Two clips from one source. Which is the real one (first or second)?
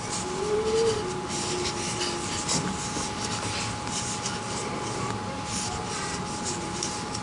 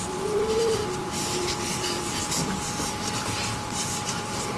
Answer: first